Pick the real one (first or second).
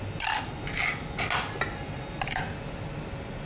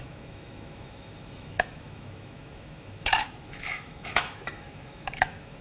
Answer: first